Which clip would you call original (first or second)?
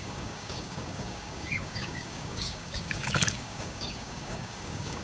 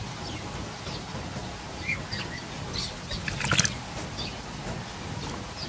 second